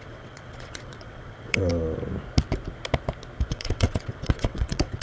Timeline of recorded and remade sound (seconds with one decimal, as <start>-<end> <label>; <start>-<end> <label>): 0.0-1.7 remade; 1.7-3.5 recorded; 3.5-5.0 remade